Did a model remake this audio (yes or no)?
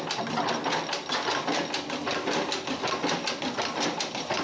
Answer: no